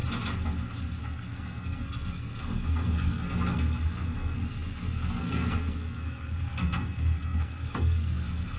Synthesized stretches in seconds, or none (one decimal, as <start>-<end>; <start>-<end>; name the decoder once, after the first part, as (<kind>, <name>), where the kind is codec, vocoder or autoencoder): 1.0-8.6 (codec, SNAC)

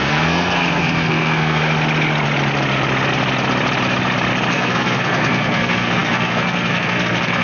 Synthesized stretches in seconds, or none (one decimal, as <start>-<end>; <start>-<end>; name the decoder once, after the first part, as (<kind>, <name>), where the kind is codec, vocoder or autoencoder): 0.0-1.6 (codec, SNAC); 4.5-7.4

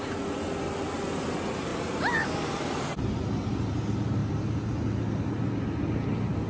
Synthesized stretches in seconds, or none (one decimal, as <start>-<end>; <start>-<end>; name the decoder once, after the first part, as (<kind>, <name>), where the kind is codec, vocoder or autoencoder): none

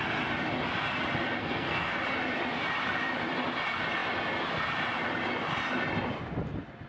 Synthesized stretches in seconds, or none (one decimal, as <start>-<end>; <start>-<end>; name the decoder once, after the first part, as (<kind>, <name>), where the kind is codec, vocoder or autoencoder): 1.4-1.9 (codec, SNAC)

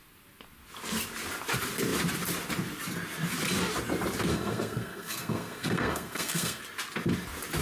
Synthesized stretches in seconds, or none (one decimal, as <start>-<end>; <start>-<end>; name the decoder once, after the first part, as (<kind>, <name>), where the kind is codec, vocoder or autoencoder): 4.3-6.6 (codec, SNAC)

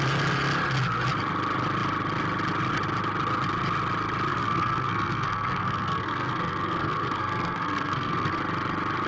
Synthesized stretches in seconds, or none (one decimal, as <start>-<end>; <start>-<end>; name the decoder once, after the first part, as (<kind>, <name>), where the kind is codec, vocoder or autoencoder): 4.3-8.4 (codec, SNAC)

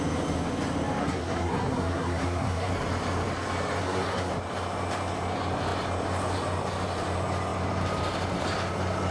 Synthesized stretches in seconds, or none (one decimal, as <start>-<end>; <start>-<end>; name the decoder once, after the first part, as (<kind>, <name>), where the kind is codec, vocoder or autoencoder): 1.0-2.7 (codec, SNAC); 3.8-4.3

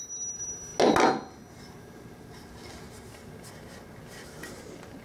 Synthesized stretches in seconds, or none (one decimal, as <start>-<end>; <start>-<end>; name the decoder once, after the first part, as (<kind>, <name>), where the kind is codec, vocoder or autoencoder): none